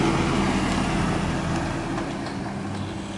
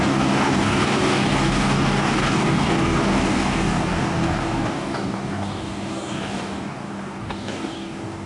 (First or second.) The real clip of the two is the first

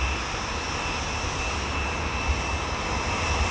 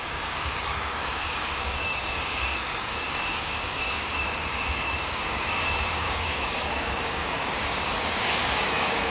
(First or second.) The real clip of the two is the first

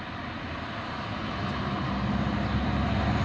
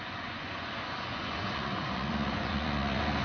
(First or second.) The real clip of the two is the first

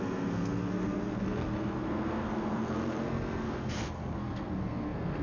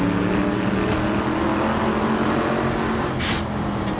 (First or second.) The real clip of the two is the second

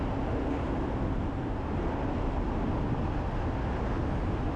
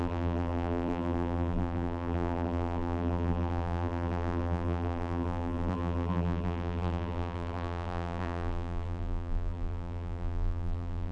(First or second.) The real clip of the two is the first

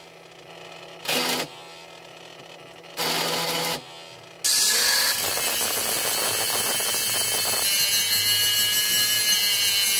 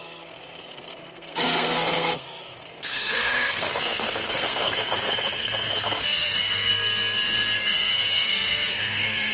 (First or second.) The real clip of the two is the first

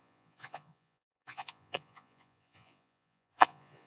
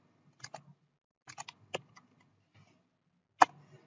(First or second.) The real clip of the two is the second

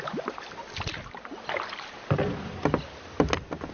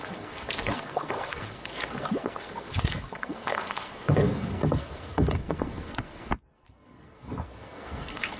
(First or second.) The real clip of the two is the first